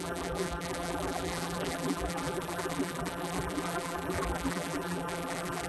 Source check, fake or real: fake